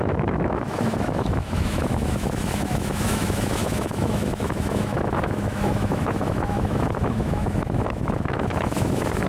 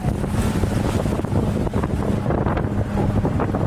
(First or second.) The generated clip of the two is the first